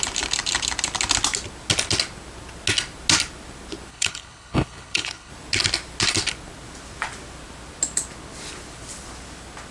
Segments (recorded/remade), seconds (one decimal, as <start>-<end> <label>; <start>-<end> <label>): 0.0-3.9 recorded; 3.9-5.3 remade; 5.3-9.7 recorded

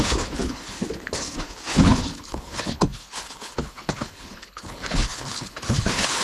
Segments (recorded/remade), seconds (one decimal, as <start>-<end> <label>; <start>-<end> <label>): 0.0-6.2 remade

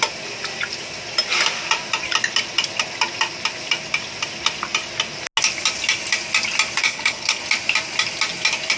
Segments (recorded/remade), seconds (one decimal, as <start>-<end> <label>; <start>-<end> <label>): 0.0-6.8 recorded; 6.8-7.4 remade; 7.4-8.8 recorded

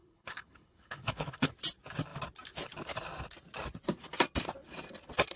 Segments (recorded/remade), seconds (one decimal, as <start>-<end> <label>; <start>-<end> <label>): 0.0-1.5 remade; 1.5-5.4 recorded